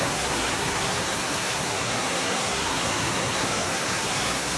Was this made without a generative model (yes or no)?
no